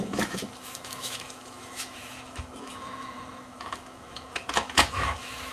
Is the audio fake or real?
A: fake